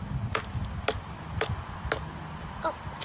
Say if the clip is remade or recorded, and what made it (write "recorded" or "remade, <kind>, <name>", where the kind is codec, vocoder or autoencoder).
recorded